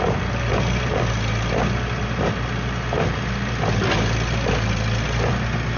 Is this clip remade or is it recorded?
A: recorded